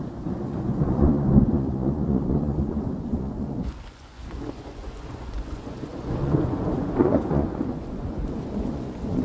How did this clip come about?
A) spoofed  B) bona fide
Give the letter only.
A